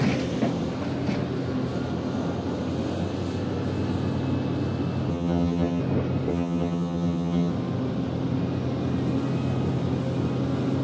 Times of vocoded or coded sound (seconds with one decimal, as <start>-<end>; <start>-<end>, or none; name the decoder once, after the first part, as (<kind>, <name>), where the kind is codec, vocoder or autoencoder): 5.1-5.8 (vocoder, HiFi-GAN); 6.3-7.5